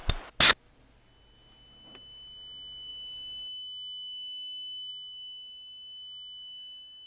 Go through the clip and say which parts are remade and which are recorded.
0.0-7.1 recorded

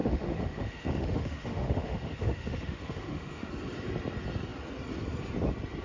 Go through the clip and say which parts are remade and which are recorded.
0.0-3.5 remade; 3.5-5.8 recorded

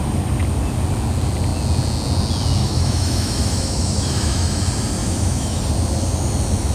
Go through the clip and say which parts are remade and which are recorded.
0.0-2.6 recorded; 2.6-4.6 remade; 4.6-5.0 recorded; 5.0-5.6 remade; 5.6-6.7 recorded

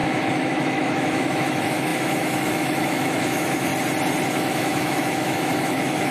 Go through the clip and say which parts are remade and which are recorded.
0.0-3.7 remade; 3.7-4.3 recorded; 4.3-6.1 remade